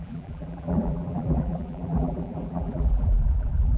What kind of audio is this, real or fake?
fake